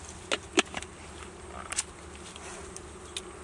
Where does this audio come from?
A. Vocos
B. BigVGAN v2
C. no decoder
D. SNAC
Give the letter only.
C